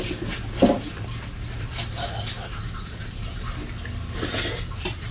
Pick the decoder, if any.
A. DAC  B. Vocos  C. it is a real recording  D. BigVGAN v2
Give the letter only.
C